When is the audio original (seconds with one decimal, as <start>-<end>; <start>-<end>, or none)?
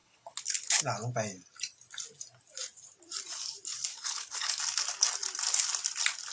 0.8-3.9; 4.6-6.3